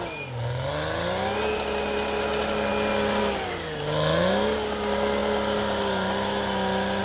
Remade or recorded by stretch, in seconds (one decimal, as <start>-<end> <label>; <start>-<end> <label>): 0.0-7.0 recorded